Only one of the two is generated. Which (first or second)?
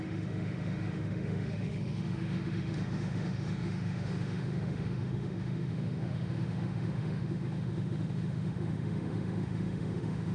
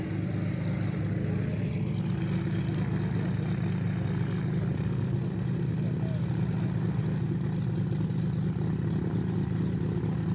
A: first